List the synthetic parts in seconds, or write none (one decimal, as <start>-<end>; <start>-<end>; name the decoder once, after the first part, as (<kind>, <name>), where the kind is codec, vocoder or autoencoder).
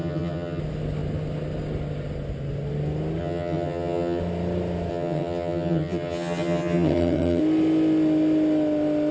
0.0-0.6 (vocoder, HiFi-GAN); 3.2-4.2; 4.9-7.4